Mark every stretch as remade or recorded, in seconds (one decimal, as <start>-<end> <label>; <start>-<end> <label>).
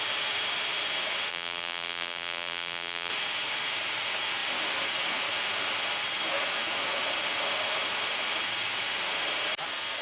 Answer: 0.0-1.3 recorded; 1.3-3.1 remade; 3.1-10.0 recorded